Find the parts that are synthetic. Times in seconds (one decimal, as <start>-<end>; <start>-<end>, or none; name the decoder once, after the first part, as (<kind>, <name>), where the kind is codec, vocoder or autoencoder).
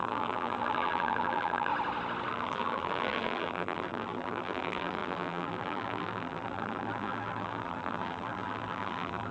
0.0-1.7 (vocoder, BigVGAN v2); 2.3-9.3